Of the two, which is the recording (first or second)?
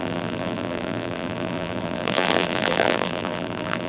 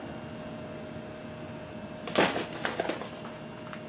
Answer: second